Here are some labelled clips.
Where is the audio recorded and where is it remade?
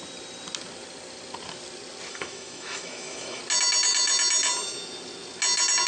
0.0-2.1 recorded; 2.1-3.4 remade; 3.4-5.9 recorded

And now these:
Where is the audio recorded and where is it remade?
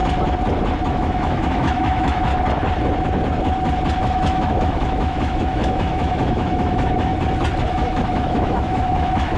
0.0-0.9 recorded; 0.9-2.3 remade; 2.3-4.0 recorded; 4.0-7.1 remade; 7.1-7.7 recorded; 7.7-9.4 remade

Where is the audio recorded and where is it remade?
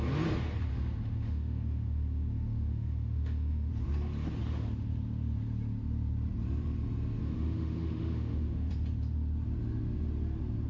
0.0-0.7 recorded; 0.7-3.7 remade; 3.7-7.2 recorded; 7.2-8.7 remade; 8.7-10.7 recorded